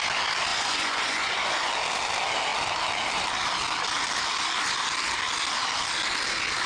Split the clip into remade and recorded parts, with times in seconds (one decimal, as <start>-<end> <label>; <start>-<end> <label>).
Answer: 0.0-0.5 recorded; 0.5-1.7 remade; 1.7-6.7 recorded